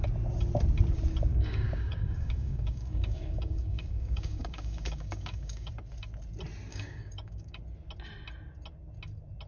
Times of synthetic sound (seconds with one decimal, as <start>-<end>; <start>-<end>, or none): 1.3-5.7; 6.7-7.6